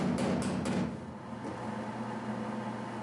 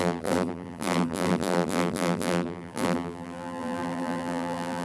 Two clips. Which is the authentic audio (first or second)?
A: first